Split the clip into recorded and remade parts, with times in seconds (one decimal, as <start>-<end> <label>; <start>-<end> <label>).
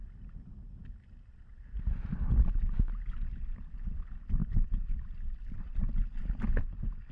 0.0-4.4 recorded; 4.4-6.3 remade; 6.3-7.1 recorded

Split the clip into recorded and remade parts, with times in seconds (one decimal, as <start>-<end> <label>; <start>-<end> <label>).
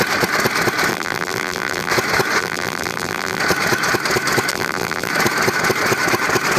0.0-0.9 recorded; 0.9-1.9 remade; 1.9-2.4 recorded; 2.4-3.4 remade; 3.4-4.5 recorded; 4.5-5.1 remade; 5.1-6.6 recorded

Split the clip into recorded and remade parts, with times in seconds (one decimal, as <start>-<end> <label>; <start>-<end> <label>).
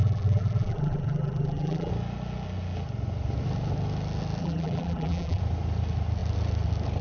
0.0-1.9 remade; 1.9-4.4 recorded; 4.4-5.4 remade; 5.4-7.0 recorded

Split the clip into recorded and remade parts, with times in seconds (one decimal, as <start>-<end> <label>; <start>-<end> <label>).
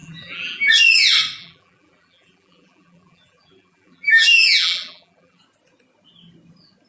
0.0-0.7 remade; 0.7-1.4 recorded; 1.4-5.4 remade; 5.4-6.9 recorded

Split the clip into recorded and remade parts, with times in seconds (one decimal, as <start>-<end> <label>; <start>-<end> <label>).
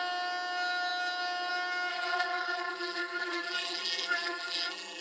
0.0-1.9 recorded; 1.9-5.0 remade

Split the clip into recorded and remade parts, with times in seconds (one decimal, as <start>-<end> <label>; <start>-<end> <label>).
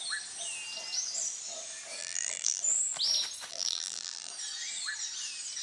0.0-2.0 recorded; 2.0-2.6 remade; 2.6-3.5 recorded; 3.5-4.3 remade; 4.3-5.6 recorded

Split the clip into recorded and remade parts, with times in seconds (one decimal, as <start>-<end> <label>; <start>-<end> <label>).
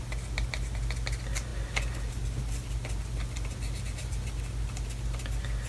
0.0-5.7 recorded